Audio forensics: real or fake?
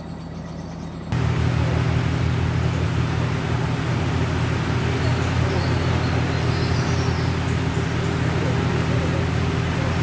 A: real